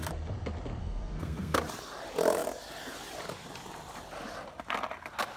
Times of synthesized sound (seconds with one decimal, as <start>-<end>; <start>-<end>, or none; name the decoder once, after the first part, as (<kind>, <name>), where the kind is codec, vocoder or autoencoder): 0.8-1.6 (codec, SNAC)